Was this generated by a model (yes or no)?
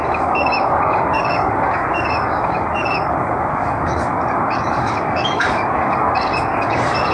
yes